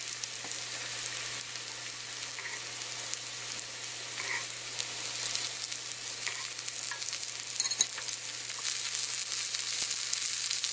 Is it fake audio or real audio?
real